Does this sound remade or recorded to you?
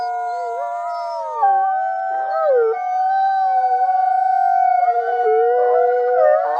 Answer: recorded